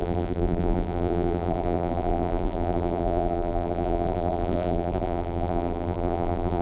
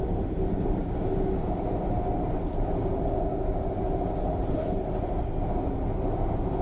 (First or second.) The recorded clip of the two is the second